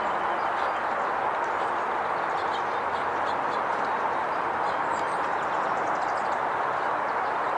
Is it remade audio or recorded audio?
recorded